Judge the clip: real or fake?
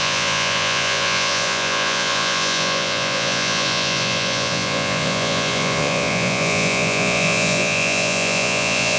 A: fake